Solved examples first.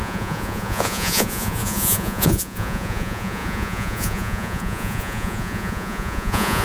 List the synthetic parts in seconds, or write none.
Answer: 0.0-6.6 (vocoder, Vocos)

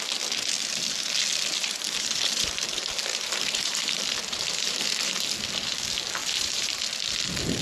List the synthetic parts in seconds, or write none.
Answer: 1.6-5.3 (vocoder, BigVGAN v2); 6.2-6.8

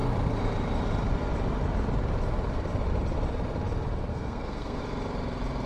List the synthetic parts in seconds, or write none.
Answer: 4.1-4.8 (codec, SNAC)

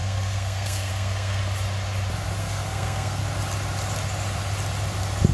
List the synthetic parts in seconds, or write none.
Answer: 0.0-1.4 (codec, SNAC); 2.4-3.2